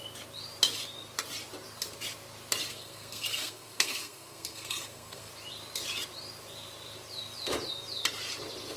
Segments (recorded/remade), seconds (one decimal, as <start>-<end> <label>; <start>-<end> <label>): 0.0-2.7 recorded; 2.7-5.3 remade; 5.3-8.8 recorded